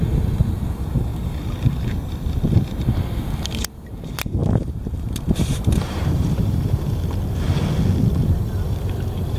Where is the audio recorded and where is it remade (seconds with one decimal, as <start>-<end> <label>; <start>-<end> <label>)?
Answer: 0.0-1.1 recorded; 1.1-1.8 remade; 1.8-4.4 recorded; 4.4-7.0 remade; 7.0-9.4 recorded